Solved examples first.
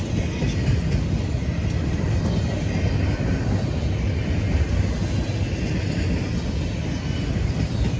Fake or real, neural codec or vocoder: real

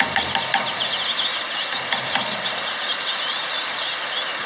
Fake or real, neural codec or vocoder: real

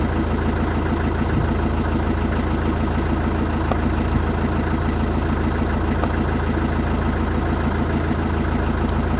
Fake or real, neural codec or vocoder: real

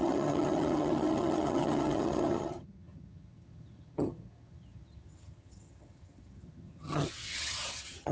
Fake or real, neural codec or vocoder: fake, vocoder, HiFi-GAN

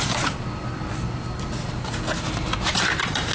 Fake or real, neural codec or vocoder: real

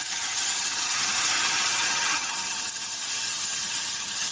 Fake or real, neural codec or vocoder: fake, vocoder, HiFi-GAN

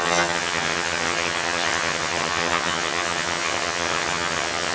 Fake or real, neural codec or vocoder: fake, vocoder, HiFi-GAN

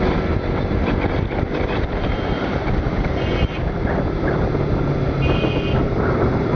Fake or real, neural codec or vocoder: real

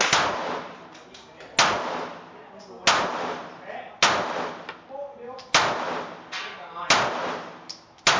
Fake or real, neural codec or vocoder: real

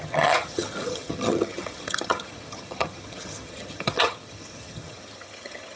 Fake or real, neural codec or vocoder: fake, vocoder, HiFi-GAN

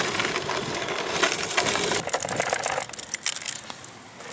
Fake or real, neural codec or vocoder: real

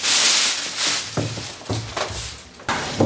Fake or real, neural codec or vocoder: real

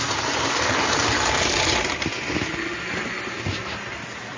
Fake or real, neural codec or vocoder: real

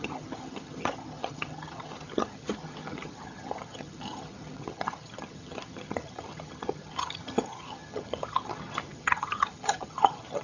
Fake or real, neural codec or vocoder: fake, vocoder, HiFi-GAN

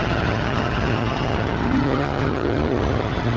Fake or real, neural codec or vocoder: fake, vocoder, HiFi-GAN